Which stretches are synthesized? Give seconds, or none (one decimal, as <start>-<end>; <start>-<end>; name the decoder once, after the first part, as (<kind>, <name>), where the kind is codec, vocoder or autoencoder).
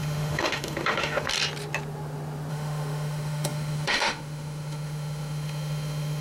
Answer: 0.0-1.3 (autoencoder, DAC-VAE); 2.5-6.2